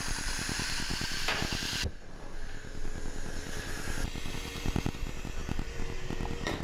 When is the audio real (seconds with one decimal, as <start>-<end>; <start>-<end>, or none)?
0.9-4.3